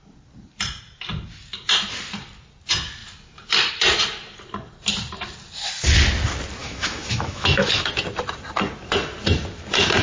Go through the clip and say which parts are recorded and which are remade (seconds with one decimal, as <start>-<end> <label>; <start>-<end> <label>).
0.0-6.6 recorded; 6.6-7.9 remade; 7.9-10.0 recorded